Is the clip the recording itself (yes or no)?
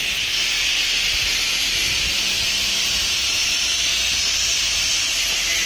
yes